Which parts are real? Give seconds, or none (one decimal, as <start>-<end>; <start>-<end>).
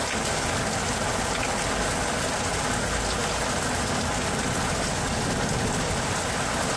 0.0-6.8